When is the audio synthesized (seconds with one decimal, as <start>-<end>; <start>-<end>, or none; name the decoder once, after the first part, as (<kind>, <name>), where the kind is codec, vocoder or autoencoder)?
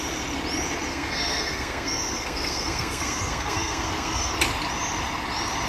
0.9-4.3 (codec, SNAC)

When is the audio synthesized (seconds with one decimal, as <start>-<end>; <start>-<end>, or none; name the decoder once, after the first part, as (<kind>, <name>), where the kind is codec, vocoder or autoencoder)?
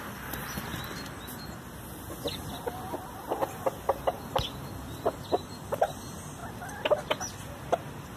none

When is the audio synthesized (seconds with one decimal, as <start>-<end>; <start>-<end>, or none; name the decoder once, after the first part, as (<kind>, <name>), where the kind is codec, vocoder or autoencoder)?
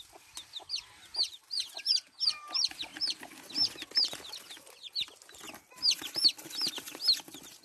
none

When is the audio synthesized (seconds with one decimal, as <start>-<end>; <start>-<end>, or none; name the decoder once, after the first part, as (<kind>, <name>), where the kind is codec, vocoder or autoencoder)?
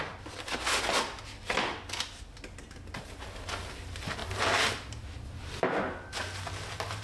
none